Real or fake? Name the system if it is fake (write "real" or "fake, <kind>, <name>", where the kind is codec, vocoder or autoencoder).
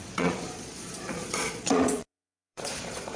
fake, vocoder, Vocos